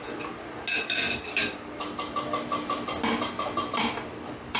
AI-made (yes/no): no